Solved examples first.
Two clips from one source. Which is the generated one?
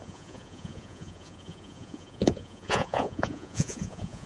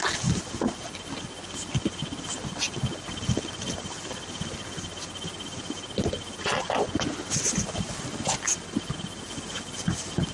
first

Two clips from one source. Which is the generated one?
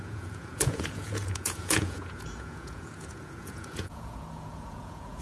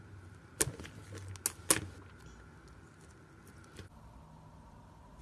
first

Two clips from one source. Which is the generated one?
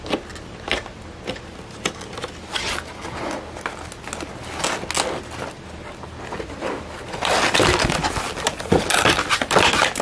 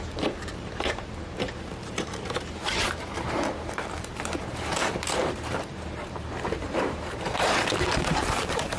second